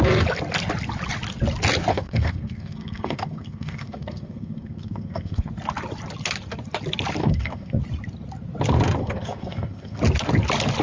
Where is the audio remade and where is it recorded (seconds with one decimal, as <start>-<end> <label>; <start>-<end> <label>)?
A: 0.0-1.9 recorded; 1.9-5.5 remade; 5.5-7.2 recorded; 7.2-7.8 remade; 7.8-9.0 recorded; 9.0-10.0 remade; 10.0-10.8 recorded

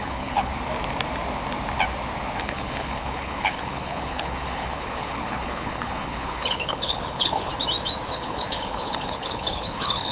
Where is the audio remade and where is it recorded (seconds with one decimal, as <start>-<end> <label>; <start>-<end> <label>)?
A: 0.0-0.5 remade; 0.5-2.4 recorded; 2.4-7.5 remade; 7.5-8.1 recorded; 8.1-10.1 remade

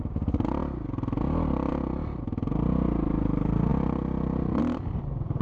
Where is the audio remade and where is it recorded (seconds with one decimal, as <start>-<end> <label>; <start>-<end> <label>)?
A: 0.0-5.4 recorded

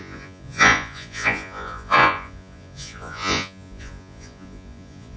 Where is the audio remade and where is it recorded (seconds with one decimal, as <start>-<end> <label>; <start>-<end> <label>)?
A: 0.0-5.2 remade

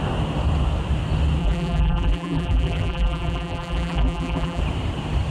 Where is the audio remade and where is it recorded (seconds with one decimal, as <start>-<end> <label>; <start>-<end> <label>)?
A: 0.0-1.4 recorded; 1.4-4.6 remade; 4.6-5.3 recorded

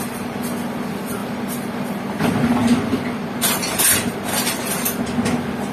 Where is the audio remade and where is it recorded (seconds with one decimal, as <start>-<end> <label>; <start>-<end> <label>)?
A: 0.0-5.7 recorded